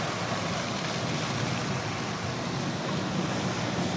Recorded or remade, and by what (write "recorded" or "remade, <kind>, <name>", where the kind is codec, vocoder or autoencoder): recorded